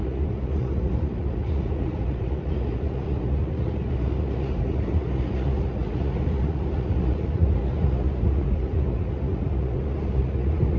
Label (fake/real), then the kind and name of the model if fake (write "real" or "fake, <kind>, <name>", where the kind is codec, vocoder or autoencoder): fake, vocoder, Vocos